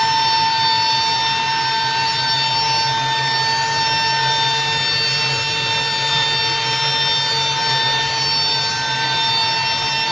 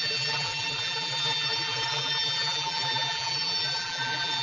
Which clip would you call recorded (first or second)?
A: first